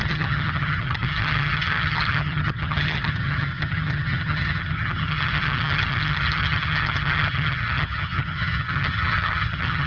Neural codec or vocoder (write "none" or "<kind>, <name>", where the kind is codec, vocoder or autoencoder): vocoder, HiFi-GAN